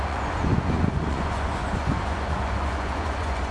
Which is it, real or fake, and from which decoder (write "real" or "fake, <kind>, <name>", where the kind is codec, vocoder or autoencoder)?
fake, vocoder, Vocos